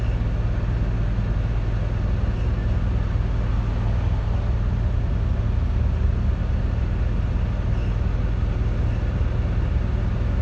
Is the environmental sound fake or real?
real